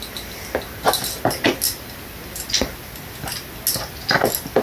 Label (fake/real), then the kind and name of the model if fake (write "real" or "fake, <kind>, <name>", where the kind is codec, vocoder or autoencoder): real